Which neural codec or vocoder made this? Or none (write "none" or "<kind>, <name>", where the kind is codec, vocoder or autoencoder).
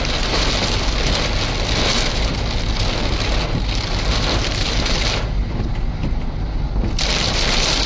none